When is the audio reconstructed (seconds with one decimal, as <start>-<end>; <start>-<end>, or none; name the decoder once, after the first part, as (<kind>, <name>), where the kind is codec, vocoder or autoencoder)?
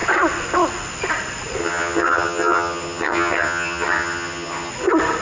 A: 1.6-4.7 (vocoder, HiFi-GAN)